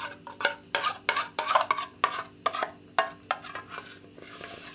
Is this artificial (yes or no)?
no